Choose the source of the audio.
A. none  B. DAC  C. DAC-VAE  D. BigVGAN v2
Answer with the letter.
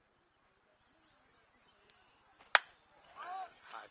A